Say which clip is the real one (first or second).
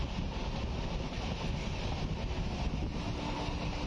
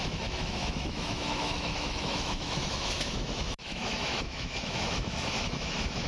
first